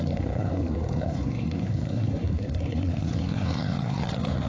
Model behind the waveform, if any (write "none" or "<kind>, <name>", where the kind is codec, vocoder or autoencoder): codec, SNAC